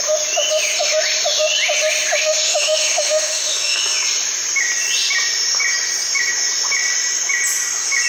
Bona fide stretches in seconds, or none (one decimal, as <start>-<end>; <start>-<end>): 0.0-2.1; 3.8-8.1